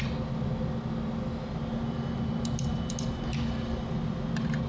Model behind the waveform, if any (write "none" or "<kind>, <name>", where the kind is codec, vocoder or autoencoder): none